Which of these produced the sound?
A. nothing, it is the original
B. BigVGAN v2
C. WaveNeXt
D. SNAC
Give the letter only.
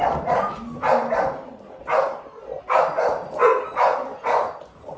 A